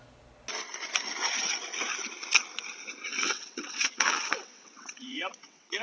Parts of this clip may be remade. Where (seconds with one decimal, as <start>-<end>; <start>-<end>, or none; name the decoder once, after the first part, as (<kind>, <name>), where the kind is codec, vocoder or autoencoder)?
3.1-5.8 (vocoder, WaveNeXt)